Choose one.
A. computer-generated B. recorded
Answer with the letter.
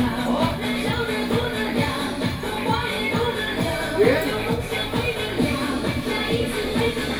A